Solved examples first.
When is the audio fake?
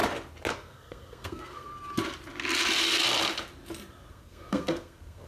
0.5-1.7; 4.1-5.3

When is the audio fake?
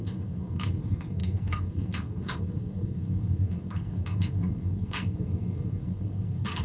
0.0-6.6